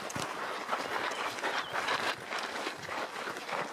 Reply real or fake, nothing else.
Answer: real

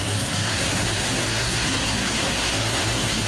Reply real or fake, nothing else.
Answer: fake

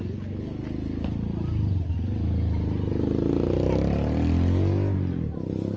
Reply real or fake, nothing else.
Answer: real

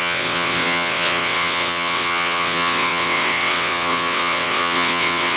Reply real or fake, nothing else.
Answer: fake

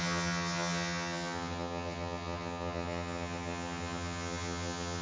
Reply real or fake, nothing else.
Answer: fake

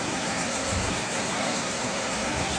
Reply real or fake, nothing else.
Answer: fake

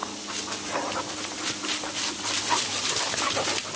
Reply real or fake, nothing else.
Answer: real